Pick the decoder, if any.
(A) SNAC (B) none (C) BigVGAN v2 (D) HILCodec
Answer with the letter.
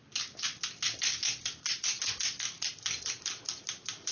B